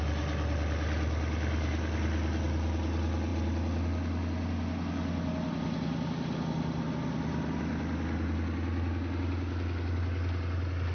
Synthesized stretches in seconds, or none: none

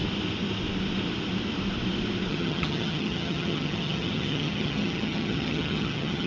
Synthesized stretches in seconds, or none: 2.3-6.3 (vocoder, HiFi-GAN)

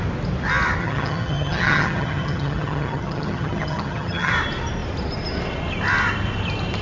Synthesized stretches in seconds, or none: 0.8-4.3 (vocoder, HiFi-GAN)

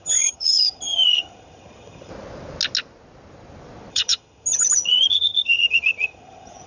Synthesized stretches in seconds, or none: 0.0-2.1 (vocoder, HiFi-GAN); 3.9-6.7

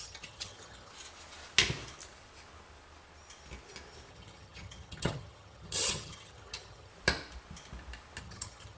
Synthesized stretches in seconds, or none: 0.0-0.9 (vocoder, HiFi-GAN); 4.1-6.9; 8.2-8.8

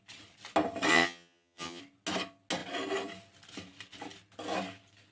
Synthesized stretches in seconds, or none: 0.9-1.8 (vocoder, HiFi-GAN)